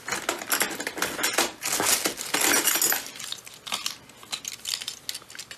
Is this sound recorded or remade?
recorded